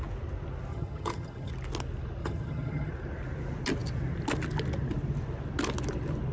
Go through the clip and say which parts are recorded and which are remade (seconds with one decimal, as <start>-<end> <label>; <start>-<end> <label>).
0.0-0.7 recorded; 0.7-1.5 remade; 1.5-2.2 recorded; 2.2-2.9 remade; 2.9-6.3 recorded